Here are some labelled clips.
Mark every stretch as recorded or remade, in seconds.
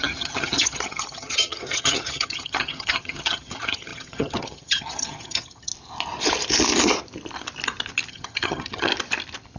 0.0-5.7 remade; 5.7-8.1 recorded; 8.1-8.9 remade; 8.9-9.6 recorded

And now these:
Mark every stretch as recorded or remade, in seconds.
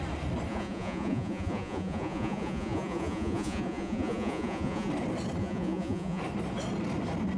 0.0-0.5 recorded; 0.5-4.9 remade; 4.9-5.4 recorded; 5.4-6.2 remade; 6.2-7.4 recorded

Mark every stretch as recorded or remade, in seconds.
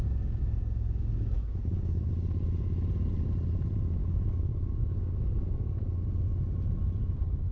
0.0-1.4 recorded; 1.4-2.1 remade; 2.1-4.0 recorded; 4.0-6.0 remade; 6.0-7.5 recorded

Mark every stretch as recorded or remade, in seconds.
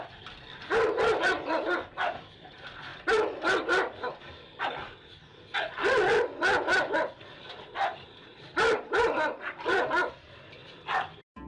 0.0-5.3 remade; 5.3-7.6 recorded; 7.6-11.5 remade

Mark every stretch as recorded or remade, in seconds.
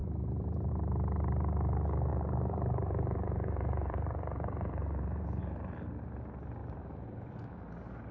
0.0-0.7 remade; 0.7-2.1 recorded; 2.1-5.4 remade; 5.4-6.6 recorded; 6.6-7.3 remade; 7.3-8.1 recorded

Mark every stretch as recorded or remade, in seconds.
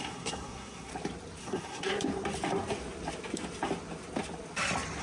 0.0-0.9 remade; 0.9-1.4 recorded; 1.4-1.9 remade; 1.9-5.0 recorded